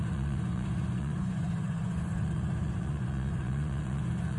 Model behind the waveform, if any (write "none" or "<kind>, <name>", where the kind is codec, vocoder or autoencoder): vocoder, Vocos